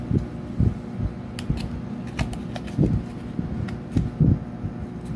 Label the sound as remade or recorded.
recorded